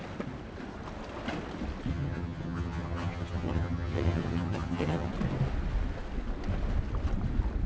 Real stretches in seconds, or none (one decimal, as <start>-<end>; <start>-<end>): 0.0-1.9; 5.1-7.7